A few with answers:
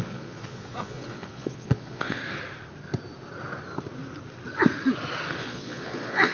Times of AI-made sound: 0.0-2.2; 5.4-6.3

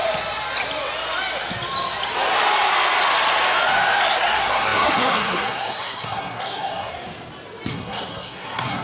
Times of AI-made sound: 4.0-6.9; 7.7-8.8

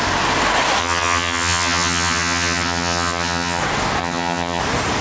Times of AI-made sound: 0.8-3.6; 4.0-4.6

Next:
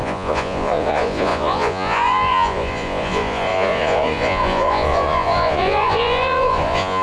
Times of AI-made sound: 0.0-7.0

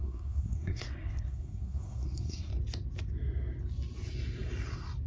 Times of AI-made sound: 0.0-2.5

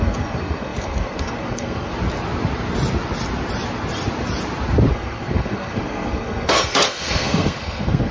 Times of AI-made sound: 0.0-1.9; 4.9-8.1

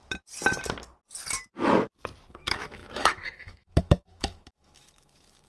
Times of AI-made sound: 2.3-5.5